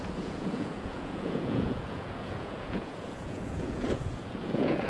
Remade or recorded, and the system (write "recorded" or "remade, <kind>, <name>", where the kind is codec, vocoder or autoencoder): remade, vocoder, Vocos